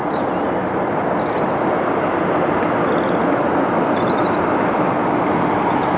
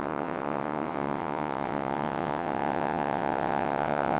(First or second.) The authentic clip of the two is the first